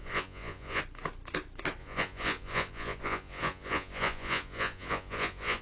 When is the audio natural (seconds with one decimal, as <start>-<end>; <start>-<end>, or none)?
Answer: 0.8-1.8